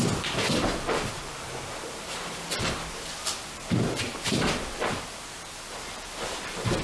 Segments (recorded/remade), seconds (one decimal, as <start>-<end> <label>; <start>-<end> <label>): 0.0-6.8 remade

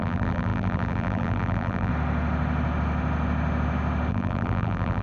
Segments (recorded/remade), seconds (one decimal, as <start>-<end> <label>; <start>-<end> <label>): 0.0-1.9 remade; 1.9-4.1 recorded; 4.1-5.0 remade

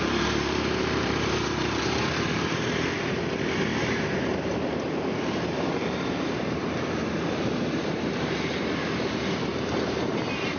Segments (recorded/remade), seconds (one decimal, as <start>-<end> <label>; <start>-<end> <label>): 0.0-10.6 remade

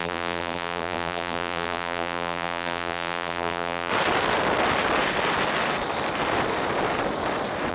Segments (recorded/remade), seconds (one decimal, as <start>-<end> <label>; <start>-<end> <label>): 0.0-3.9 remade; 3.9-7.7 recorded

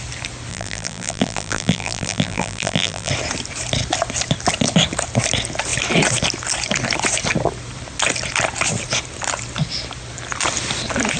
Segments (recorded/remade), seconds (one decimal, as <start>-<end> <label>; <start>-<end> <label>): 0.0-0.5 recorded; 0.5-3.1 remade; 3.1-11.2 recorded